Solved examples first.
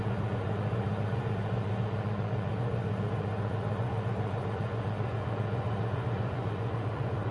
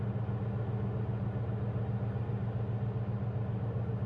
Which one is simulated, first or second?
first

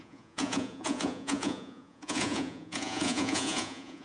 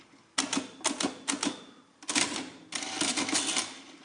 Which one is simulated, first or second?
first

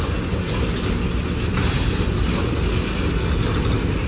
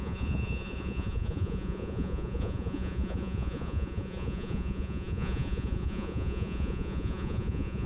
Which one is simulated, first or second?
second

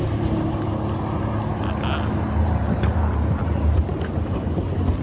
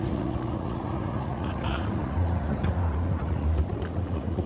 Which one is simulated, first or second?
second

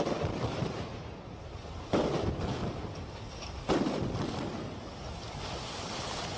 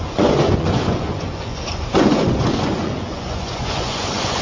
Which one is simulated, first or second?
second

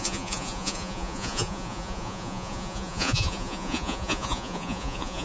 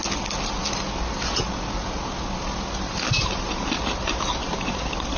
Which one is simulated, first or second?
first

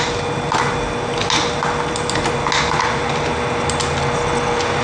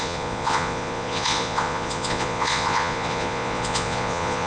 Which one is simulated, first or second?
second